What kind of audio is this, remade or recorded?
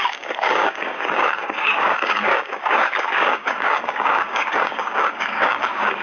remade